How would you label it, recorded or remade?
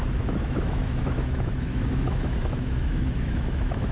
remade